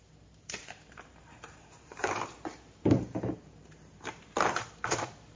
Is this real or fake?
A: fake